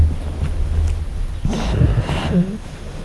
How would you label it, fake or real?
real